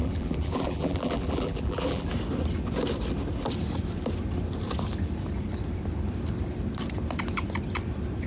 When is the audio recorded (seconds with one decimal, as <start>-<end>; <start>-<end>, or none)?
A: 2.1-8.3